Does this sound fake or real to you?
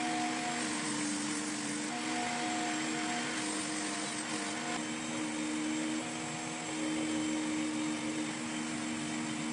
real